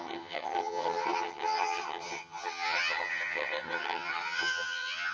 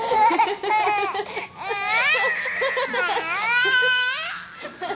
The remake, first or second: first